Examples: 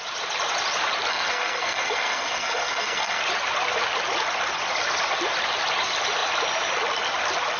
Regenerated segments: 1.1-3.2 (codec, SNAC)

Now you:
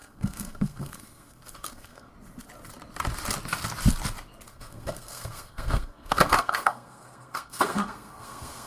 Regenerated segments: 0.0-2.1 (codec, SNAC); 4.5-8.7

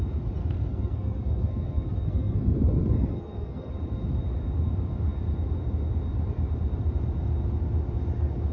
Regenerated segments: 0.4-3.7 (codec, SNAC)

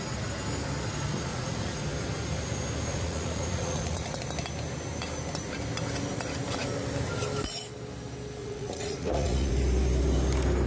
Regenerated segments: 1.3-1.8 (vocoder, Vocos); 2.9-4.2; 8.4-9.5

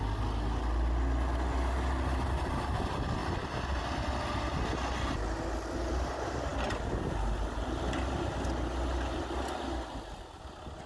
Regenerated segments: none

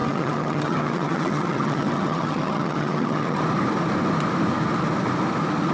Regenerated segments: 0.0-3.4 (vocoder, HiFi-GAN)